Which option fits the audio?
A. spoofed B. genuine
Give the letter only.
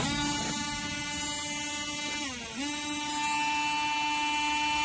B